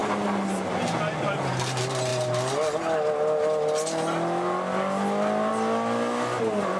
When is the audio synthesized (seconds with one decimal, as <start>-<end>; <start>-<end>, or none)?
none